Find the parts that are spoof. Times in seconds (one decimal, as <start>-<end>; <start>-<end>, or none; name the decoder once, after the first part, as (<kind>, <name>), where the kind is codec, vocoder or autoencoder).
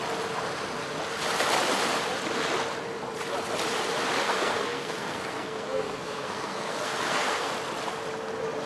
4.2-7.5 (codec, SNAC)